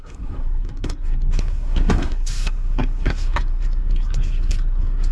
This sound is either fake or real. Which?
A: fake